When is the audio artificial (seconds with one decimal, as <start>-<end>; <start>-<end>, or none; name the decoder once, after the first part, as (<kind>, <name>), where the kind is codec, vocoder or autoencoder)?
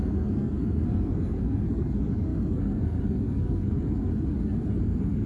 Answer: 0.0-4.1 (codec, SNAC); 4.8-5.3